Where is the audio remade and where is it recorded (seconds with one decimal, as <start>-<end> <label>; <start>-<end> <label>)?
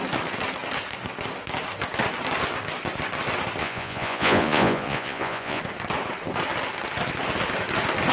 0.0-3.6 recorded; 3.6-5.6 remade; 5.6-8.1 recorded